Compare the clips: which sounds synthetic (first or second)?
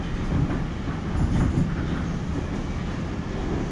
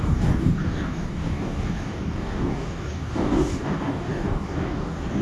second